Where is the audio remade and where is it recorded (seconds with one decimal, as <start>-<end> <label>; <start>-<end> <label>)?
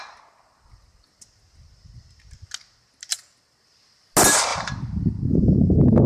0.0-6.1 recorded